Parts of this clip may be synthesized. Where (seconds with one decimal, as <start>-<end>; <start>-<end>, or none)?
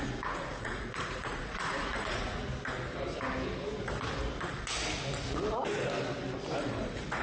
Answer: 0.0-2.4; 6.6-7.2